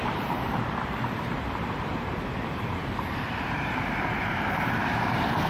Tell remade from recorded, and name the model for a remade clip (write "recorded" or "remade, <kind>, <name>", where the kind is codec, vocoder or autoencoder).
remade, vocoder, BigVGAN v2